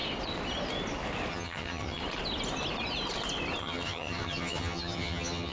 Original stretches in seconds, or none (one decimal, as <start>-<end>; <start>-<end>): 0.0-1.3; 2.0-3.6